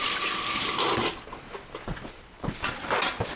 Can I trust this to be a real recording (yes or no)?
yes